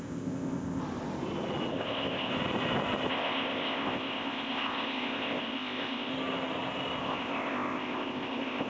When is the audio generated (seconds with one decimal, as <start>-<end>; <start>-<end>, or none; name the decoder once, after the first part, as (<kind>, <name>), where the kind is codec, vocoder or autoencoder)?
0.0-0.8 (codec, ZipCodec); 1.7-2.3; 3.1-6.1; 7.0-8.7